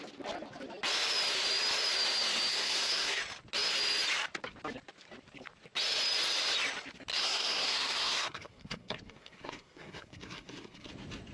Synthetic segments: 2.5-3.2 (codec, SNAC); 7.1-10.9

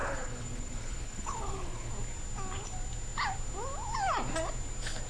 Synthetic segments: 0.0-1.9 (codec, HILCodec)

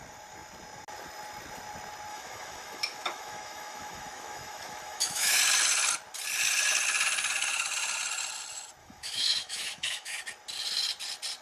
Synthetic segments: 2.1-5.4 (autoencoder, DAC-VAE); 8.8-10.2

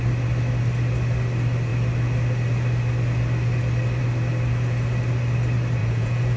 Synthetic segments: 5.8-6.4 (vocoder, Vocos)

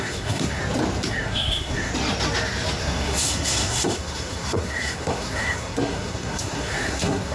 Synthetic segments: 0.0-0.6 (codec, SNAC); 1.1-1.9; 2.8-7.3

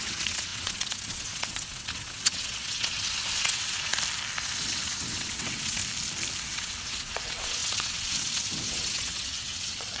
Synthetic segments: 0.0-3.9 (vocoder, WaveNeXt); 4.4-5.8; 6.4-10.0

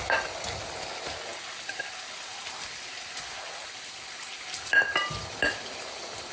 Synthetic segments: none